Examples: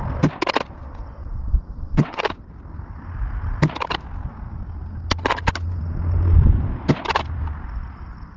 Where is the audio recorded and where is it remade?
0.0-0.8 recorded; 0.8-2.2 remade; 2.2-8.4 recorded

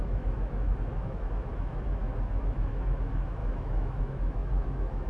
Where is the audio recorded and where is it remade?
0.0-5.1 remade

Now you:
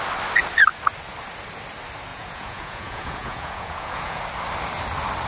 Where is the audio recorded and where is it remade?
0.0-2.1 recorded; 2.1-4.2 remade; 4.2-5.3 recorded